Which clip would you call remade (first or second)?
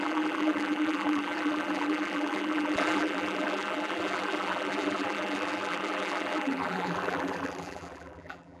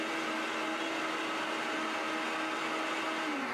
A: first